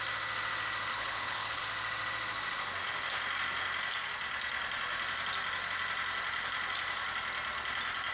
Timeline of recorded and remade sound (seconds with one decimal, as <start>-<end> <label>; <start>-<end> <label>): 0.0-0.9 recorded; 0.9-1.6 remade; 1.6-8.1 recorded